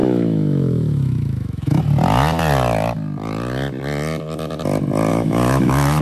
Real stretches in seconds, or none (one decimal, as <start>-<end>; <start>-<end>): 1.8-5.1